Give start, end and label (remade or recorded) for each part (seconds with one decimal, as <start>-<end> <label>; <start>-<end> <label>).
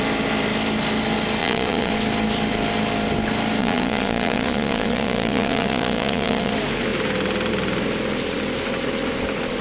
0.0-1.4 recorded; 1.4-1.9 remade; 1.9-3.6 recorded; 3.6-6.5 remade; 6.5-9.6 recorded